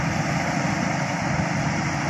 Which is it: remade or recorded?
remade